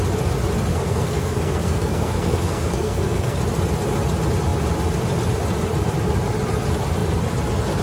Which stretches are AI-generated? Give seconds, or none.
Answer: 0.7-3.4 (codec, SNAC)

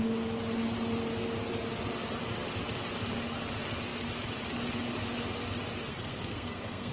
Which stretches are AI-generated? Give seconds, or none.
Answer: 5.9-6.9 (codec, SNAC)

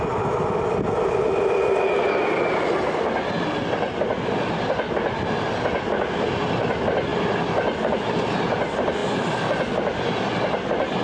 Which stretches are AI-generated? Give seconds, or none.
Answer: none

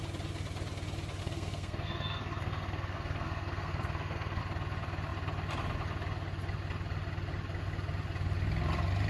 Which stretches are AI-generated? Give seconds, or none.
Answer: 1.2-4.4 (codec, SNAC)

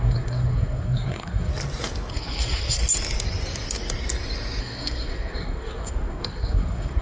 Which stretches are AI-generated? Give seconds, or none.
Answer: 0.0-1.5 (codec, SNAC); 2.1-2.8; 4.6-7.0

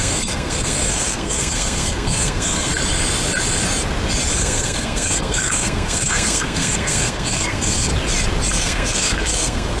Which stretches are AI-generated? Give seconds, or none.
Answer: 0.0-2.7 (codec, SNAC); 4.4-7.9; 8.5-9.8